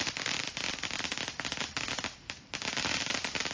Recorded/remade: recorded